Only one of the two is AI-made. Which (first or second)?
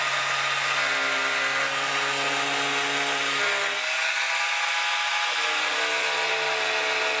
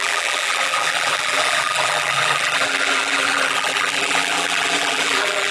second